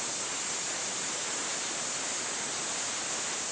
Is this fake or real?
real